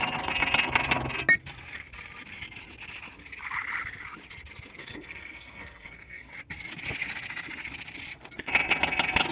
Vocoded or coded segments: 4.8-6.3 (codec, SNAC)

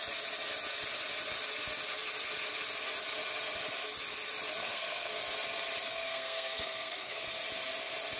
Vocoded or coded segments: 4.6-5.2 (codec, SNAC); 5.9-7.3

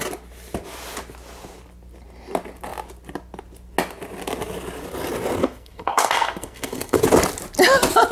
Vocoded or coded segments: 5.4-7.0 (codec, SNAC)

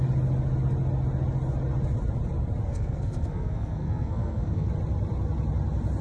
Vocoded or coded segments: 2.7-4.7 (codec, SNAC)

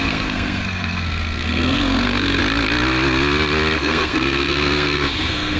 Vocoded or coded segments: 0.0-2.4 (codec, SNAC); 3.8-5.6

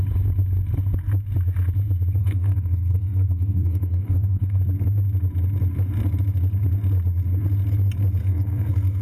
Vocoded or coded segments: 2.2-4.6 (codec, SNAC); 8.2-9.0